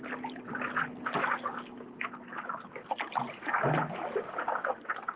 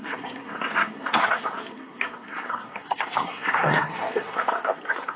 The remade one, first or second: second